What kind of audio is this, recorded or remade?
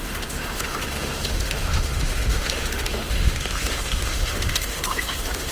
remade